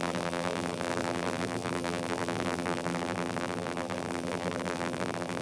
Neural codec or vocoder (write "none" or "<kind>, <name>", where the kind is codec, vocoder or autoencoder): vocoder, BigVGAN v2